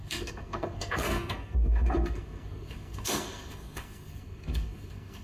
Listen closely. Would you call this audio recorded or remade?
remade